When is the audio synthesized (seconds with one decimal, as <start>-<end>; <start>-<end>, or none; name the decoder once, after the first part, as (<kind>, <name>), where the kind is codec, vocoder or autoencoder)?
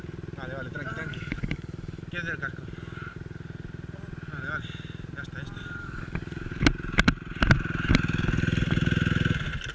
1.1-2.0 (codec, DAC); 5.8-6.5